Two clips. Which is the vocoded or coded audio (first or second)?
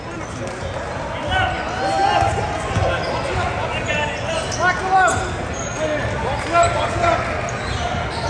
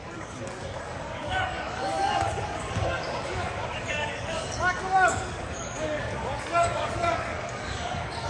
second